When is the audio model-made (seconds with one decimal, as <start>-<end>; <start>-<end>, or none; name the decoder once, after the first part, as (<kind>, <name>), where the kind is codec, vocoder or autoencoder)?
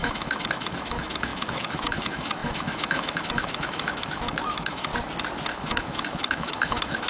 0.0-4.9 (autoencoder, DAC-VAE); 5.5-7.1